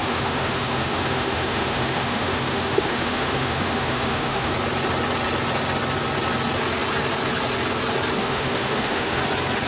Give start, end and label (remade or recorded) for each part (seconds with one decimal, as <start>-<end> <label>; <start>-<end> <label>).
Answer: 0.0-4.5 remade; 4.5-8.2 recorded; 8.2-9.2 remade; 9.2-9.7 recorded